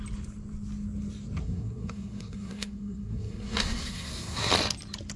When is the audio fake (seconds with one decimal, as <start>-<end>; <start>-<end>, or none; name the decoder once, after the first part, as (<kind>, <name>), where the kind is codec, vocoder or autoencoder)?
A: 1.4-4.5 (codec, SNAC)